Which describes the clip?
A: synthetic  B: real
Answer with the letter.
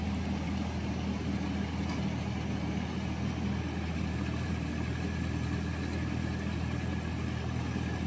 B